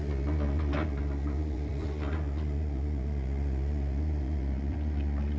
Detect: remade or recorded remade